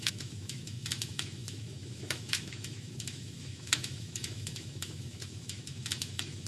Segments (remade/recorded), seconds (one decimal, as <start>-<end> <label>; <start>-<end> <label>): 0.0-6.5 remade